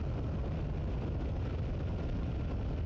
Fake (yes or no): no